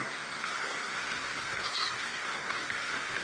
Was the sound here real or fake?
fake